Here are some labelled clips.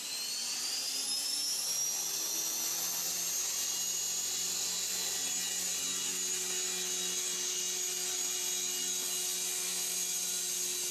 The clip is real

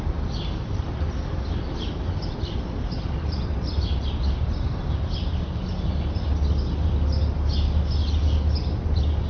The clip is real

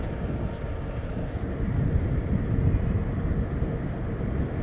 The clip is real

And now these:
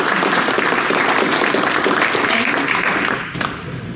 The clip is real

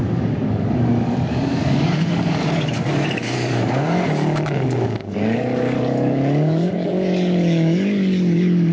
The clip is fake